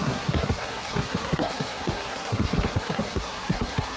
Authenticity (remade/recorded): remade